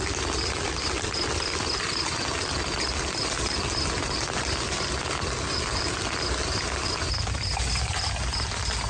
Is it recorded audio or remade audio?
recorded